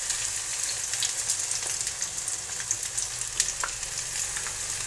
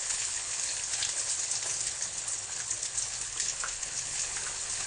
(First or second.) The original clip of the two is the first